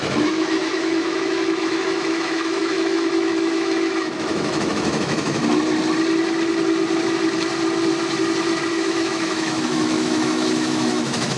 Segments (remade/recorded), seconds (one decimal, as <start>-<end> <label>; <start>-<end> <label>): 0.0-5.4 remade; 5.4-8.7 recorded; 8.7-11.4 remade